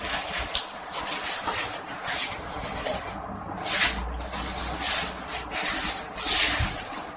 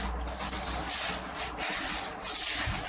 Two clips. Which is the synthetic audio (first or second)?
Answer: first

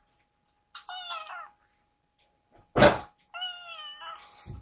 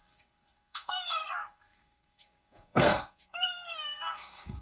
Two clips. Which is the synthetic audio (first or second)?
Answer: second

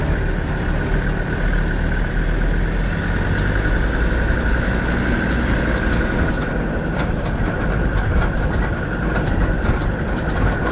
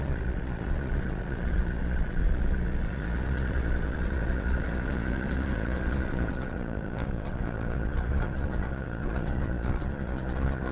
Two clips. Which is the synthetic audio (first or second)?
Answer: second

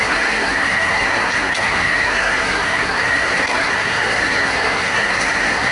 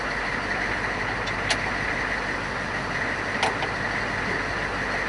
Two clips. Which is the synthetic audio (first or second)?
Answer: first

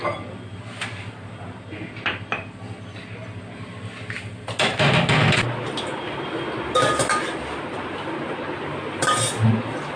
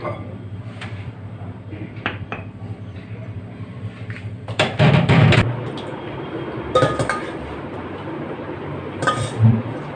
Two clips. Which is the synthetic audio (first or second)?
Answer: second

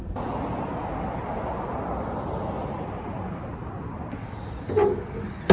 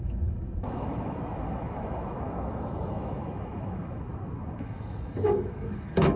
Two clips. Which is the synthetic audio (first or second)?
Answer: second